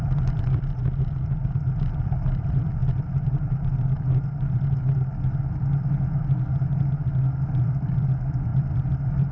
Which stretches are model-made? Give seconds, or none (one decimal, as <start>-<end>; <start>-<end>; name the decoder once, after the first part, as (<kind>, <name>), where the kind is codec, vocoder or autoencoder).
0.0-0.8 (vocoder, BigVGAN v2); 2.1-2.8; 7.5-9.3